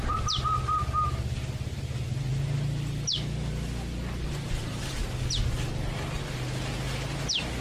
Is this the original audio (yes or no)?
yes